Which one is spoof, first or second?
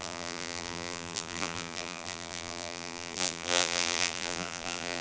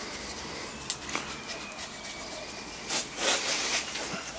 first